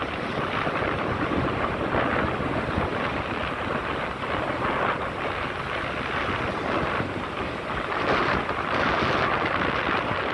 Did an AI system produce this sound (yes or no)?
no